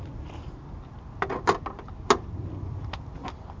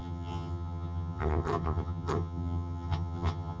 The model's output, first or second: second